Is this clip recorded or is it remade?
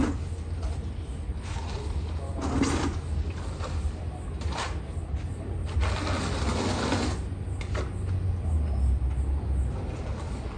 recorded